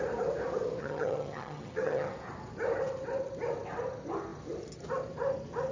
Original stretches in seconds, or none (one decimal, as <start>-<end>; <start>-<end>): 0.0-0.8; 2.1-5.7

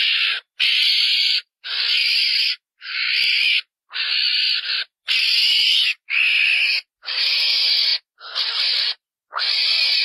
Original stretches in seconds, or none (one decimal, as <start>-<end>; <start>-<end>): 0.0-0.9; 1.7-10.0

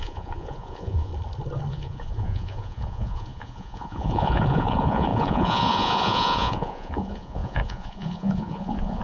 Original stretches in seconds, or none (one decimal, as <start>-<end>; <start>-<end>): 1.1-1.7

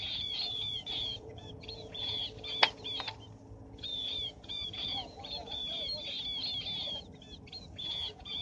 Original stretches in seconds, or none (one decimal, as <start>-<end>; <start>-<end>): 2.2-3.7; 5.6-7.8

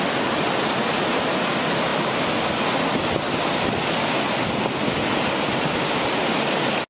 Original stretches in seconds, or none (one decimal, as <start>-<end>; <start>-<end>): 0.0-6.9

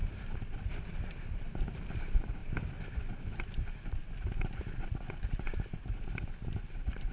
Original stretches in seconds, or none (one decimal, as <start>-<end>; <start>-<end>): 2.4-3.2

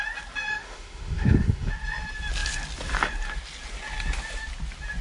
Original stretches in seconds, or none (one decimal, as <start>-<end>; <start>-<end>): 0.0-0.5; 1.7-5.0

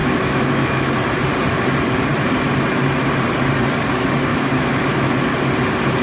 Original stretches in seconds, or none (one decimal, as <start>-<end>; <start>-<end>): 0.9-4.3; 5.1-6.0